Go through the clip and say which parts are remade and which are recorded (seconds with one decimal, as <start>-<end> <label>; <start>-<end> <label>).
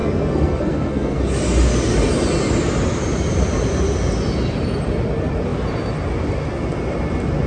0.0-1.2 remade; 1.2-7.5 recorded